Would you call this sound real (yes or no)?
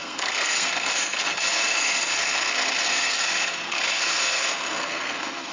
no